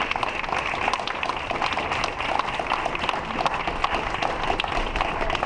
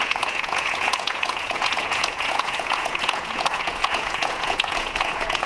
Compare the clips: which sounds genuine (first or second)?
first